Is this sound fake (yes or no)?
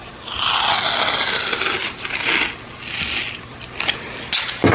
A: no